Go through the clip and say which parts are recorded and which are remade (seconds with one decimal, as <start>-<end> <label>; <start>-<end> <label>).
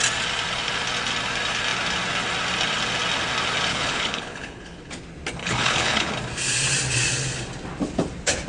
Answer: 0.0-3.7 recorded; 3.7-4.9 remade; 4.9-5.4 recorded; 5.4-6.1 remade; 6.1-8.5 recorded